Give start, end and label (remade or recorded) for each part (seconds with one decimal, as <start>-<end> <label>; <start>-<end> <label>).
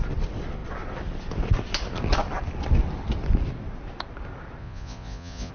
0.0-4.6 recorded; 4.6-5.5 remade